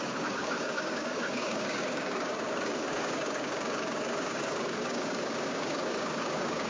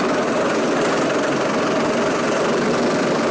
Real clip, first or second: second